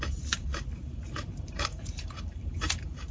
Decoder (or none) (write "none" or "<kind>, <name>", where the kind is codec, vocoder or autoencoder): vocoder, BigVGAN v2